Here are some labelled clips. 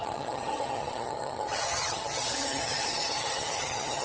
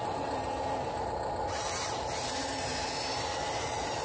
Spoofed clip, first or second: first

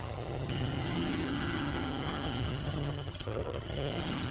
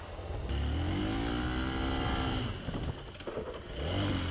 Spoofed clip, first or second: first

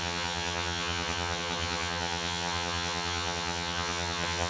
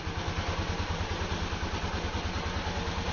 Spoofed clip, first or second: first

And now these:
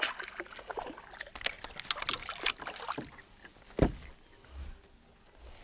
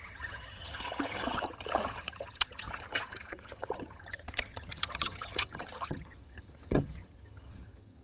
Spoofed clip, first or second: second